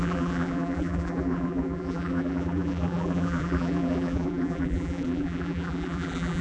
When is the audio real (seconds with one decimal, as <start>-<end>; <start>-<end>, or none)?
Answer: none